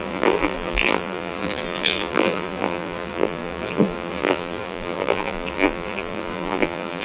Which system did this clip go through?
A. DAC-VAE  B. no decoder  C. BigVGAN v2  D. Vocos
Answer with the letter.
C